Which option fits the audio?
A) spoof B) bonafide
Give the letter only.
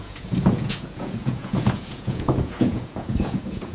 A